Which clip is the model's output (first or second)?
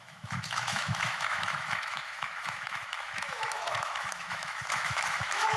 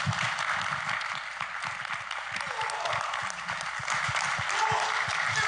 first